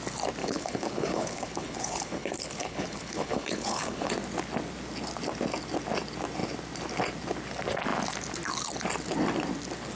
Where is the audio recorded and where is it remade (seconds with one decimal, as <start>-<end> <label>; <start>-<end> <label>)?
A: 0.0-0.4 recorded; 0.4-4.1 remade; 4.1-10.0 recorded